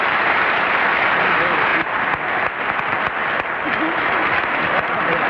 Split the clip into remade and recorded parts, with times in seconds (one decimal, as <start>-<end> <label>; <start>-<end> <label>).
0.0-5.3 recorded